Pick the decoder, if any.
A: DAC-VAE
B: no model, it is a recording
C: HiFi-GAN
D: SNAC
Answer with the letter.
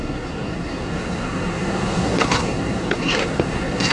D